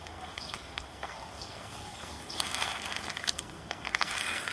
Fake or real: fake